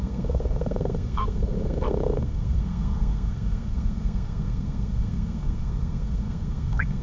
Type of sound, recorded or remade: remade